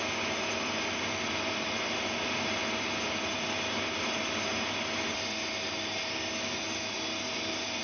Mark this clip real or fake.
real